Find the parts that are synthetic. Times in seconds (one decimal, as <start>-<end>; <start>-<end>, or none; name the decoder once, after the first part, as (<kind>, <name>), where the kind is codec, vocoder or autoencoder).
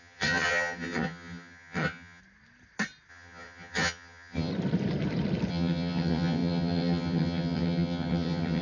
0.0-2.2 (vocoder, HiFi-GAN); 3.1-4.5; 5.5-8.6